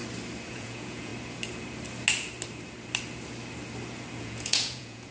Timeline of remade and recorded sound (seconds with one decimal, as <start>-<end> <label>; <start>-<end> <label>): 0.0-0.5 recorded; 0.5-1.1 remade; 1.1-4.2 recorded; 4.2-5.1 remade